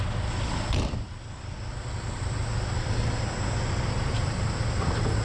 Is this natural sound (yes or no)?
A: yes